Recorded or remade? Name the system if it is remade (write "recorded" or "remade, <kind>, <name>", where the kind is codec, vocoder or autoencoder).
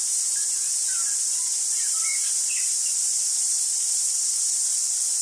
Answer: recorded